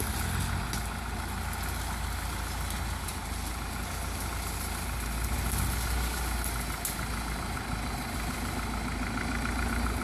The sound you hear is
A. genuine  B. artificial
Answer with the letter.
A